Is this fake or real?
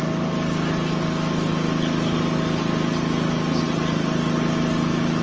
real